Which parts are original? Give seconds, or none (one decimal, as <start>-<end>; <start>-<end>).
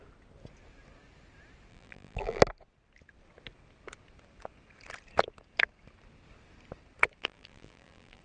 0.0-1.7; 2.4-7.2